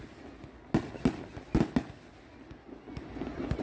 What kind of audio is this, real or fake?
real